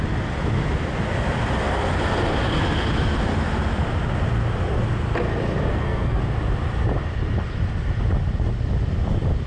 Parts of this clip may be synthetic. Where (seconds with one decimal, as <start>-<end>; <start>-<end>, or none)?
5.7-6.2